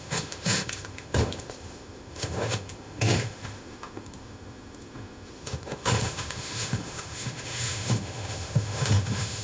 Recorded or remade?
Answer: remade